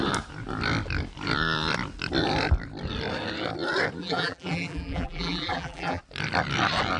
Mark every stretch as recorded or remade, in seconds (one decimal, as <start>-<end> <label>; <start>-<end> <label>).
0.0-4.0 recorded; 4.0-6.0 remade; 6.0-7.0 recorded